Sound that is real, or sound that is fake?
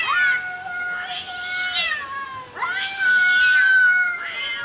real